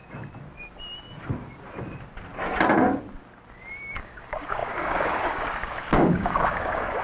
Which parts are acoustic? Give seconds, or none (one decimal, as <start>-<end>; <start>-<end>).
0.0-3.9

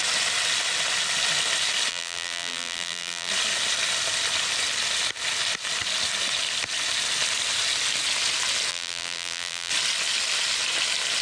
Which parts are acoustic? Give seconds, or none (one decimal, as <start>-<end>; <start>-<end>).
0.0-1.9; 3.3-8.7; 9.7-11.2

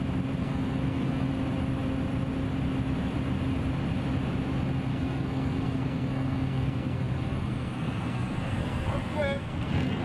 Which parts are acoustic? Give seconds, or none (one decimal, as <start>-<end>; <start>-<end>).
0.0-0.4; 1.3-4.9

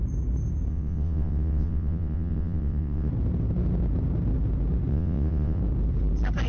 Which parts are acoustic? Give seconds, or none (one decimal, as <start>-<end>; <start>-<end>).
0.0-0.7; 3.1-4.9; 5.6-6.5

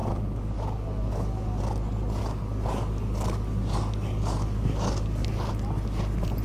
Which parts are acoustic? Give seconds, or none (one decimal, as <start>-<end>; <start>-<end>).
1.6-2.2; 5.5-6.4

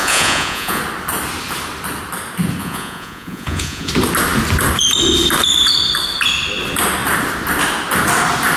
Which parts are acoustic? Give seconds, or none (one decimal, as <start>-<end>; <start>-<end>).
0.8-2.6; 3.9-8.6